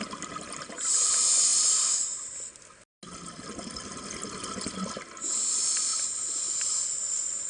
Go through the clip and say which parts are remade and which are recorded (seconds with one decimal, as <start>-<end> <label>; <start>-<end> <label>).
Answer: 0.0-7.5 recorded